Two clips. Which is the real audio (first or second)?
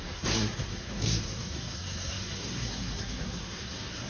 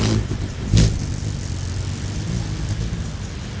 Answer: second